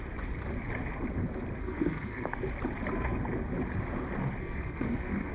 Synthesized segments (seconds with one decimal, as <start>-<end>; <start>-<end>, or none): 1.6-2.4; 4.4-5.3